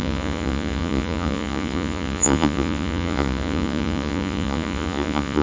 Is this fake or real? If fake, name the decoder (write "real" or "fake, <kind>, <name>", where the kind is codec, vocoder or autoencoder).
fake, vocoder, Vocos